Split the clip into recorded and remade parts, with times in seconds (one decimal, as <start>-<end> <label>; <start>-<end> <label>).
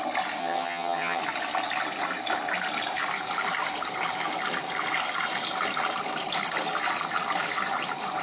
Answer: 0.0-0.4 recorded; 0.4-1.2 remade; 1.2-8.2 recorded